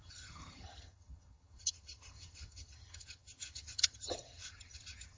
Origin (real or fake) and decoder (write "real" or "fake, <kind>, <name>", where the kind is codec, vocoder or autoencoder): fake, vocoder, HiFi-GAN